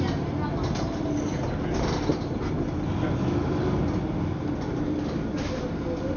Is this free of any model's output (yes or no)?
yes